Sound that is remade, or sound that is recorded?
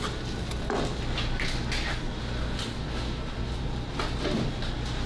recorded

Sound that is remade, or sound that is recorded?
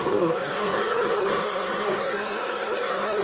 remade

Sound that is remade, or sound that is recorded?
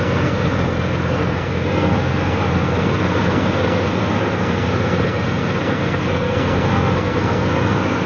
remade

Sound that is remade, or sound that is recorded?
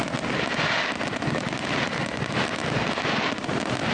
recorded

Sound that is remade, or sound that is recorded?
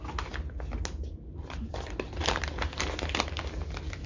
recorded